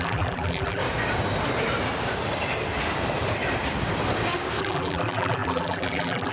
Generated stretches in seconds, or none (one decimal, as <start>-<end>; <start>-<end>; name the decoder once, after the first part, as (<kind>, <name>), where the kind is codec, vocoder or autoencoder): 0.0-0.8 (vocoder, BigVGAN v2); 4.6-6.3